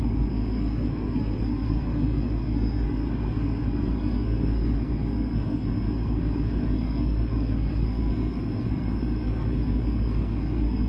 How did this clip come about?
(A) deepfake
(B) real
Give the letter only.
A